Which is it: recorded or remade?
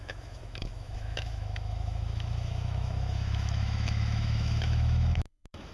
remade